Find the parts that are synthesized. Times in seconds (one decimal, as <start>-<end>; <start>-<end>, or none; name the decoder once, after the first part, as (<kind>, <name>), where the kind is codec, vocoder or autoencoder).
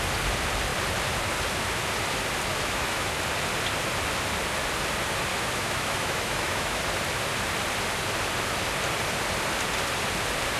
2.5-3.2 (autoencoder, DAC-VAE); 5.3-6.8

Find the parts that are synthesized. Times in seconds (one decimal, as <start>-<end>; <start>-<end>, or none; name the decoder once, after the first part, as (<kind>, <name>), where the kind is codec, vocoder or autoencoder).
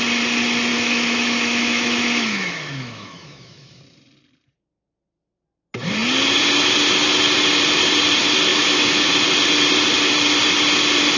0.7-3.8 (autoencoder, DAC-VAE); 8.5-9.1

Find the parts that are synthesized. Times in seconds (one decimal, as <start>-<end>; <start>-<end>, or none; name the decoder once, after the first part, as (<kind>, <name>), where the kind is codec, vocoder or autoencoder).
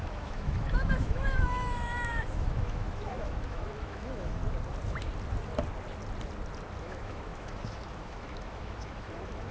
0.0-4.4 (autoencoder, DAC-VAE); 6.8-9.5